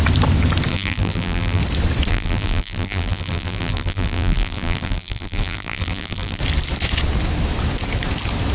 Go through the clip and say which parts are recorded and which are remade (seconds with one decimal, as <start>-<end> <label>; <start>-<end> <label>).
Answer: 0.0-0.7 recorded; 0.7-1.6 remade; 1.6-2.1 recorded; 2.1-6.4 remade; 6.4-8.5 recorded